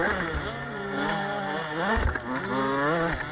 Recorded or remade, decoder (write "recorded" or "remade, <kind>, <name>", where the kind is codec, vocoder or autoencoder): recorded